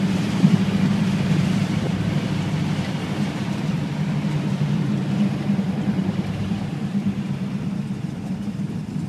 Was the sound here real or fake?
fake